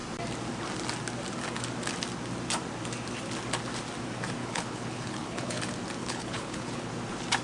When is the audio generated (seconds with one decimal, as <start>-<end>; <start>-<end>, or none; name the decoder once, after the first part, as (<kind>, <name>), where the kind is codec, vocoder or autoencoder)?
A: 4.4-5.6 (codec, HILCodec); 6.0-6.9